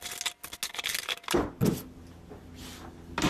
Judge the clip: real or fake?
real